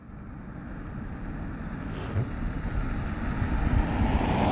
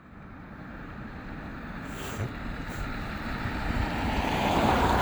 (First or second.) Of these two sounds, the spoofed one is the second